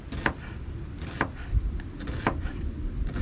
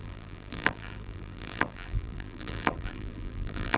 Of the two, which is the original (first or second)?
first